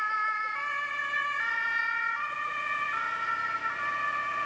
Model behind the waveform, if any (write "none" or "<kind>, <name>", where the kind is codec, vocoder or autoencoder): none